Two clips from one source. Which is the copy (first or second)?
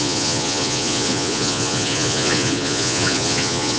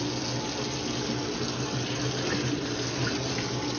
first